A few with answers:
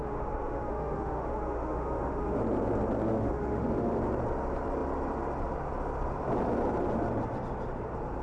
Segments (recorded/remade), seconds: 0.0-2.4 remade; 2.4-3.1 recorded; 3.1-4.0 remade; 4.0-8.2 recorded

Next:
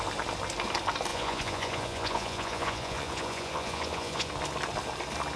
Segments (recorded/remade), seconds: 0.0-1.1 recorded; 1.1-4.3 remade; 4.3-5.4 recorded

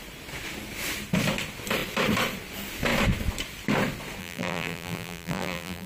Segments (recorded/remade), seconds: 0.0-4.2 recorded; 4.2-5.9 remade

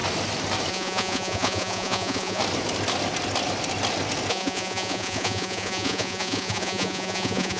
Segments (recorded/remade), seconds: 0.0-0.7 recorded; 0.7-2.4 remade; 2.4-4.3 recorded; 4.3-7.6 remade

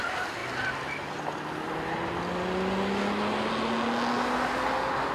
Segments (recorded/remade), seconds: 0.0-5.1 recorded

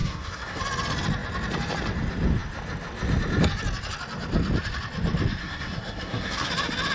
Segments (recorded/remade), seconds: 0.0-0.6 remade; 0.6-5.4 recorded; 5.4-6.5 remade; 6.5-6.9 recorded

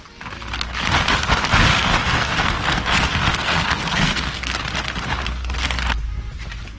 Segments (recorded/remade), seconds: 0.0-1.7 recorded; 1.7-4.5 remade; 4.5-6.8 recorded